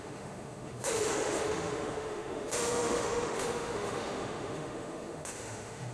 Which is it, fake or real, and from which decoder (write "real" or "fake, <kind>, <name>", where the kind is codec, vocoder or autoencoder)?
fake, autoencoder, DAC-VAE